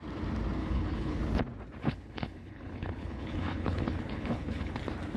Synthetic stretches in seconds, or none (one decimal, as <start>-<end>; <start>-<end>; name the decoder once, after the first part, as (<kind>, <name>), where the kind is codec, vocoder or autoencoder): 0.6-1.2 (codec, HILCodec); 1.8-4.8